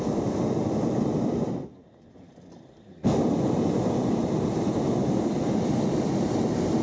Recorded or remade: recorded